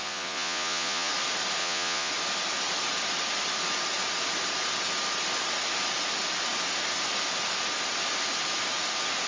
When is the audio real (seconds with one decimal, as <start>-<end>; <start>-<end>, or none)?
1.1-1.6; 2.1-9.3